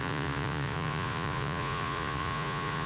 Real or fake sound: fake